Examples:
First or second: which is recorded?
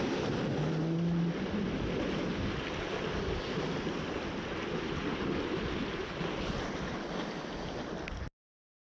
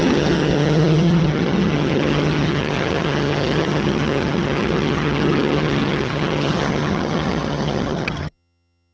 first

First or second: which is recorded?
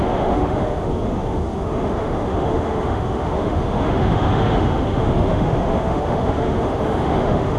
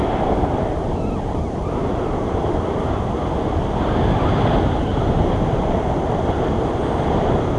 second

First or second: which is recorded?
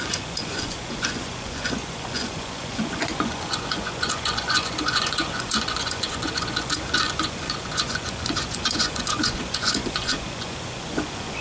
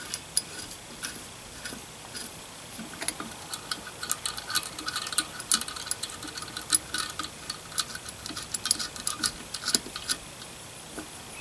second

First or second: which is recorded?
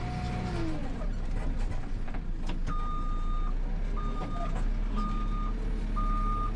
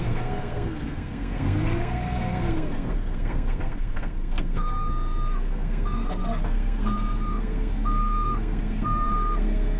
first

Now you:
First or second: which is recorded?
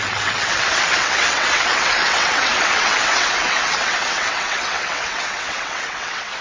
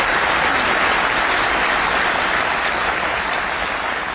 second